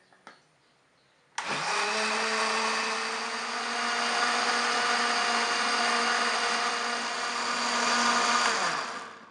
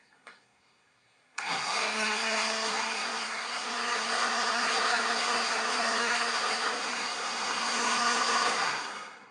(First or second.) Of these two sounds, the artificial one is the second